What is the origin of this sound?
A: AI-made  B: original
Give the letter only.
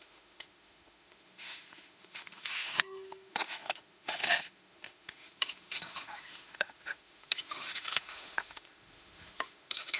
A